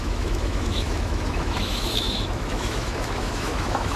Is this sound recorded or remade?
remade